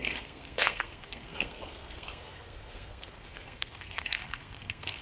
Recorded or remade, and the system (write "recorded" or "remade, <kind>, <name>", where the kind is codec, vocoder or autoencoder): remade, codec, SNAC